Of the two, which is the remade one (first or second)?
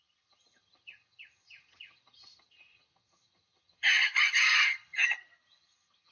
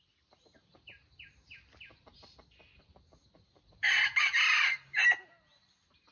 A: first